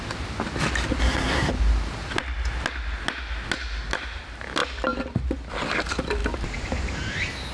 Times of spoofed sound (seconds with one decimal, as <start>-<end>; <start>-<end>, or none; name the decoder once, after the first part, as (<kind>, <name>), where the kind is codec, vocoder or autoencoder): 1.0-1.5 (codec, SNAC)